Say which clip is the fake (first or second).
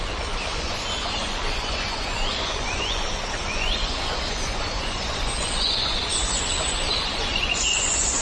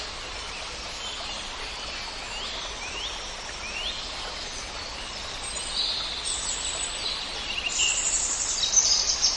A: first